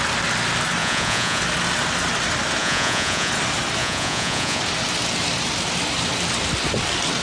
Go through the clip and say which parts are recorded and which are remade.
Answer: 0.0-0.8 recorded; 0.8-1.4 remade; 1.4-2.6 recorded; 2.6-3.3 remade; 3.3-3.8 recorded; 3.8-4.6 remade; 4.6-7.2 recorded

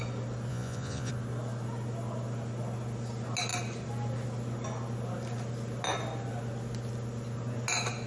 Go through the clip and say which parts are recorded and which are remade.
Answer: 0.0-0.5 recorded; 0.5-1.1 remade; 1.1-8.1 recorded

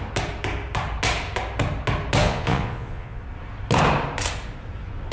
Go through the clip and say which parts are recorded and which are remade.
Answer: 0.0-2.2 recorded; 2.2-3.2 remade; 3.2-5.1 recorded

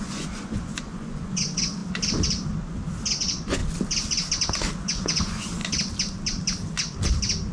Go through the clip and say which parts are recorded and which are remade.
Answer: 0.0-1.8 remade; 1.8-3.2 recorded; 3.2-3.6 remade; 3.6-4.8 recorded; 4.8-5.6 remade; 5.6-7.5 recorded

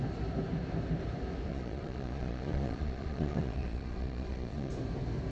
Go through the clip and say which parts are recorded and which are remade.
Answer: 0.0-1.5 recorded; 1.5-4.7 remade; 4.7-5.3 recorded

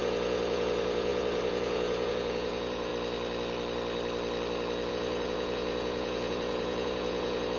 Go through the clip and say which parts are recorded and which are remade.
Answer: 0.0-2.9 remade; 2.9-4.9 recorded; 4.9-7.6 remade